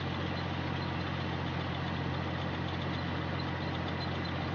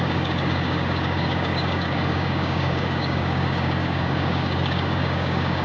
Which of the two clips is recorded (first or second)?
first